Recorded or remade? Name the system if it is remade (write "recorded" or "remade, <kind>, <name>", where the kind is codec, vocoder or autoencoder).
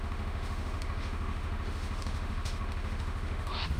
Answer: remade, autoencoder, DAC-VAE